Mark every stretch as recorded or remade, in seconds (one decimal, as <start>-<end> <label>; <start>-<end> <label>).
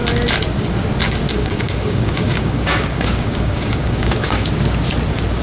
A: 0.0-1.3 recorded; 1.3-4.5 remade; 4.5-5.4 recorded